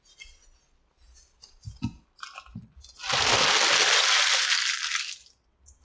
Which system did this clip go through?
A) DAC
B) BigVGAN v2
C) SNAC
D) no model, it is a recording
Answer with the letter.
D